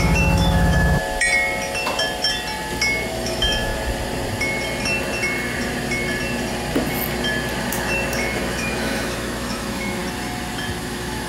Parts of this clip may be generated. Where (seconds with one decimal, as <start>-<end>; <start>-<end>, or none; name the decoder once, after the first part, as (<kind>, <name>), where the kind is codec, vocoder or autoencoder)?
0.0-1.0 (autoencoder, DAC-VAE); 3.1-3.7; 7.6-10.0; 10.8-11.3